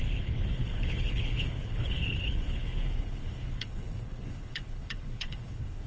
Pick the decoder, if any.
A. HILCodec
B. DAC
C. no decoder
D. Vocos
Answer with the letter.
A